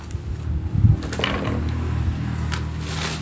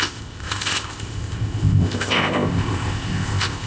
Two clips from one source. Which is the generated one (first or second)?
second